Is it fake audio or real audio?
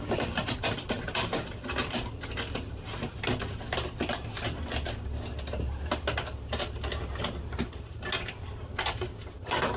real